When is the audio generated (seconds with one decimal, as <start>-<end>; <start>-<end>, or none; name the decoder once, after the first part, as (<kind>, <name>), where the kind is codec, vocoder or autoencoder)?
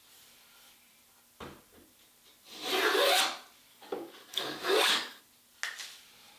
3.7-5.2 (codec, DAC)